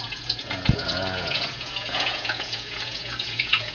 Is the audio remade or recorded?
remade